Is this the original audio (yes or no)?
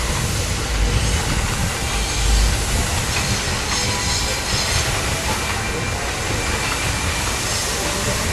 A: yes